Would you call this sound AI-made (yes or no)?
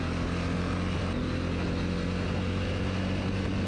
no